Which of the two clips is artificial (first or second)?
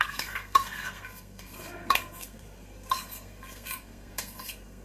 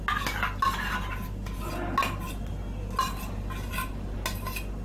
first